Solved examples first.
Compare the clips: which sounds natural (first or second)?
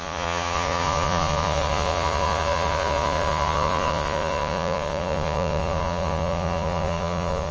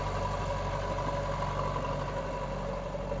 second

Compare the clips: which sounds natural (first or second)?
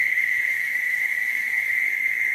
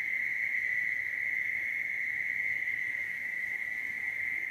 second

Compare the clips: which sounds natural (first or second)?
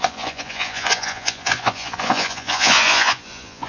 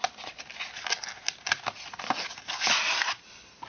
second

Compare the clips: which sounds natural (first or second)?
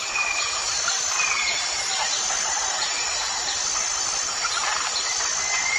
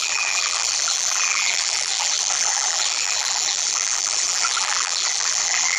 first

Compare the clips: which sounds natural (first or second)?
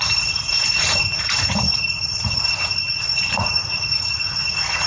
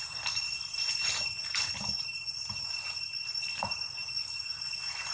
second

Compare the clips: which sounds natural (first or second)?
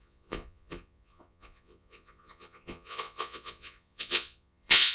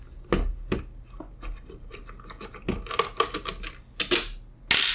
second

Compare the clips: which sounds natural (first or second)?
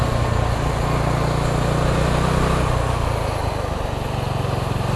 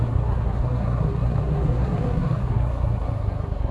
first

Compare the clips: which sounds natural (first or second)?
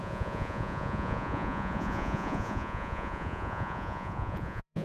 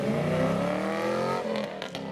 second